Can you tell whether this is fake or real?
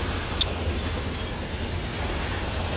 real